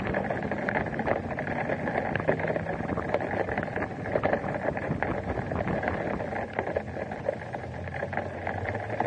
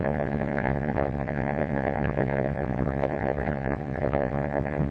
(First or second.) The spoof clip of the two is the second